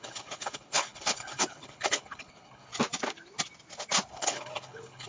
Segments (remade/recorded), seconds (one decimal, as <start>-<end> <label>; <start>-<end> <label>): 0.0-2.7 remade; 2.7-4.1 recorded; 4.1-5.1 remade